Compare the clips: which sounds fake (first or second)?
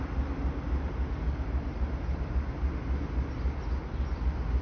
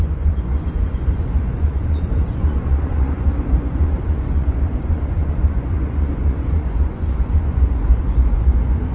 second